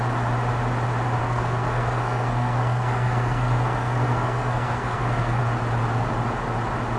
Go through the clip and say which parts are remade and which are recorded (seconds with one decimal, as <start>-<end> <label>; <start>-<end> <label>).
0.0-1.2 recorded; 1.2-5.4 remade; 5.4-7.0 recorded